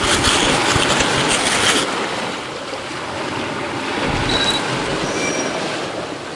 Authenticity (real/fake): real